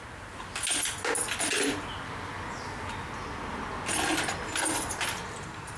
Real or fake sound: real